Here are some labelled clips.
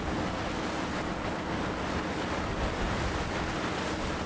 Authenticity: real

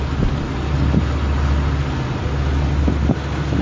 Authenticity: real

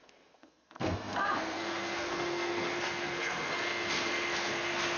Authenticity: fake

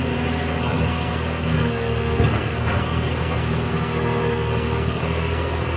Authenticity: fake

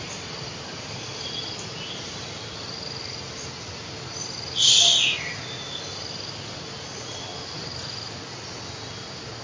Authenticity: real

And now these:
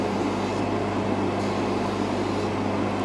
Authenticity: real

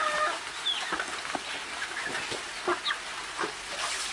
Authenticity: real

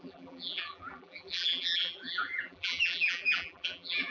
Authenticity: fake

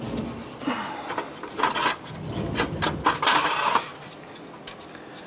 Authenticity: real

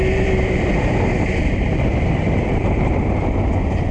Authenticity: fake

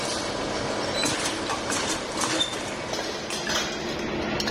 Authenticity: real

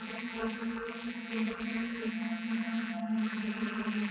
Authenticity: fake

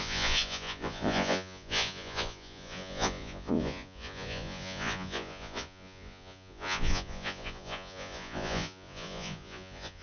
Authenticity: fake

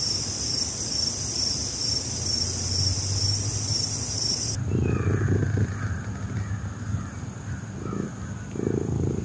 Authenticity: real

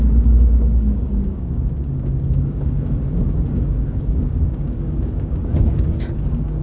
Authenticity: fake